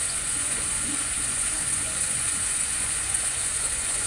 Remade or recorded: remade